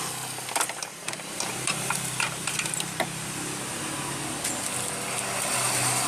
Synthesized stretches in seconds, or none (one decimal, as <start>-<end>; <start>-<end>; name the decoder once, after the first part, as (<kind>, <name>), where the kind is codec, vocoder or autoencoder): 1.0-2.5 (vocoder, BigVGAN v2)